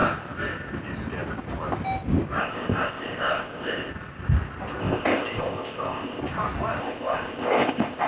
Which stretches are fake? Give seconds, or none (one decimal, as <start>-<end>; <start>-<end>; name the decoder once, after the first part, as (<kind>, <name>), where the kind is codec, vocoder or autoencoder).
2.4-3.9 (codec, ZipCodec); 4.8-6.2; 6.8-8.1